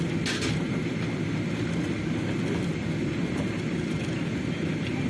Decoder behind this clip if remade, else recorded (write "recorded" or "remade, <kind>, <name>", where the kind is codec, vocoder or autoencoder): recorded